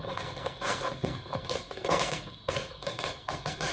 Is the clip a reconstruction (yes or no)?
yes